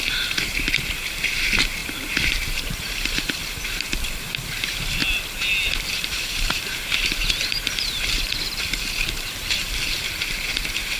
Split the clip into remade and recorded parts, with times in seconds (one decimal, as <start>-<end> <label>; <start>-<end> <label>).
0.0-5.0 remade; 5.0-5.7 recorded; 5.7-11.0 remade